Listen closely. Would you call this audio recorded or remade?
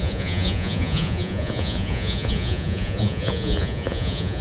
remade